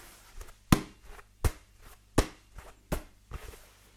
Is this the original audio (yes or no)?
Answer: yes